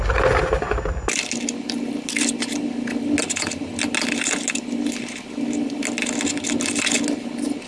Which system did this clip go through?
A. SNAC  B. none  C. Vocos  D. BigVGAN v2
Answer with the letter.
B